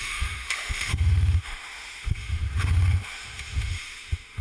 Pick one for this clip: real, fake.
fake